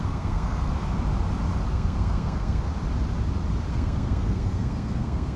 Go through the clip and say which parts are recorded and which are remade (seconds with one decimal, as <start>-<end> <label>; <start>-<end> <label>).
0.0-0.7 remade; 0.7-1.7 recorded; 1.7-2.7 remade; 2.7-3.7 recorded; 3.7-5.4 remade